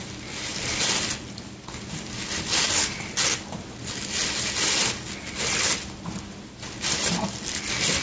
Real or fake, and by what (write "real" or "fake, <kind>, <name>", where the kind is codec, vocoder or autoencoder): real